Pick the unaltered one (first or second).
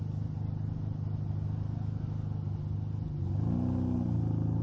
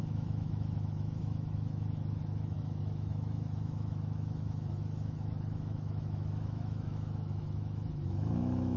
first